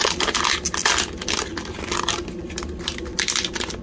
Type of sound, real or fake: real